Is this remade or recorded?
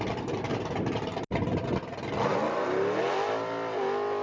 recorded